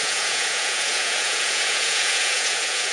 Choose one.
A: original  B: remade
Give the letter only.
B